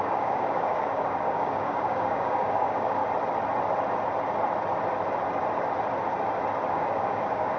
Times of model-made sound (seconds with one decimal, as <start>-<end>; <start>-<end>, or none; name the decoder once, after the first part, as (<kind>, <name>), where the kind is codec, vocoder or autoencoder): 0.0-3.0 (codec, DAC); 6.7-7.6